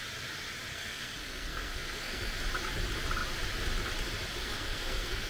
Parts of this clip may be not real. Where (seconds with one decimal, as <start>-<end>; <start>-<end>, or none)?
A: 0.7-2.4; 4.4-5.3